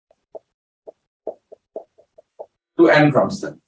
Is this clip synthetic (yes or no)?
yes